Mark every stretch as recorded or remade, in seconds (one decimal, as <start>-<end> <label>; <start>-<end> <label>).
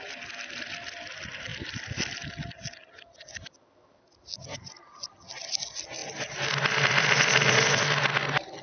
0.0-6.0 recorded; 6.0-7.5 remade; 7.5-8.6 recorded